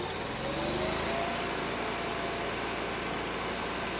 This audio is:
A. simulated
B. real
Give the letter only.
B